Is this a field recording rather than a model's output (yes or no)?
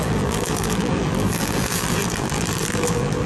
no